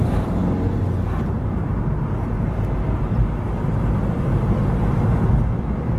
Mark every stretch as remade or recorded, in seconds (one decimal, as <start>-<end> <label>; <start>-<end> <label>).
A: 0.0-6.0 recorded